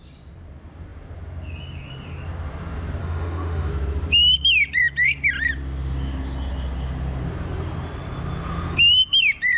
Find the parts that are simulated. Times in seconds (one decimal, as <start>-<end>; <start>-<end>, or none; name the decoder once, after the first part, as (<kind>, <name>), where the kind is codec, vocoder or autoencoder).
3.0-3.7 (autoencoder, DAC-VAE)